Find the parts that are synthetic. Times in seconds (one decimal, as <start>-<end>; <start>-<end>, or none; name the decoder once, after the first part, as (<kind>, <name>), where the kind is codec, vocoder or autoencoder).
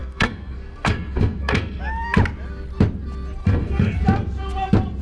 0.0-1.8 (codec, SNAC); 3.4-4.0